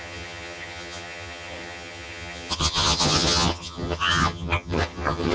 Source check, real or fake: fake